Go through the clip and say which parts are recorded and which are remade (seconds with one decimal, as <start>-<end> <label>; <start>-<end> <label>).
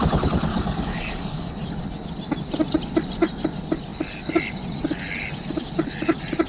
0.0-0.5 recorded; 0.5-1.6 remade; 1.6-6.5 recorded